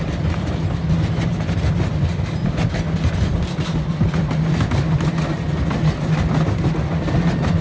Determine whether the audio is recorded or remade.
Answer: recorded